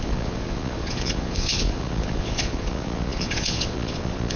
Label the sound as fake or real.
fake